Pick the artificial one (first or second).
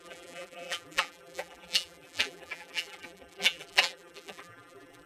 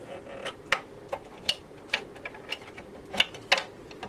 first